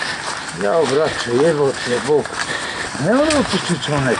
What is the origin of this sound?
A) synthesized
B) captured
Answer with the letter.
B